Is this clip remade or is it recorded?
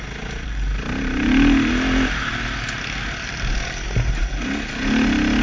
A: recorded